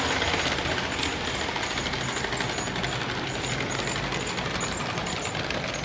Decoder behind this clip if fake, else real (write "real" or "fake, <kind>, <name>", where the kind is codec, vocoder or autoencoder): real